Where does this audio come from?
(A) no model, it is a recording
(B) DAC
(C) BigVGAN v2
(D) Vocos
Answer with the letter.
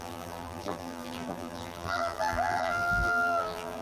C